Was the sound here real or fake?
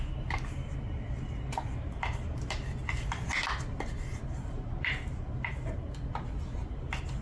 real